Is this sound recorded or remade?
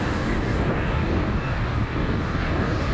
remade